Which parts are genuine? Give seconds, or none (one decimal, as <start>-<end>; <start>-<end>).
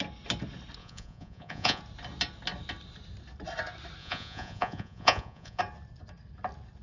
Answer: 0.0-0.8; 1.8-4.0; 5.6-6.8